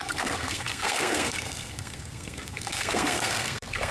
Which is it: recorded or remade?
remade